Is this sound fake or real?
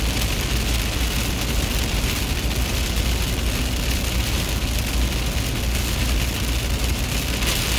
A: real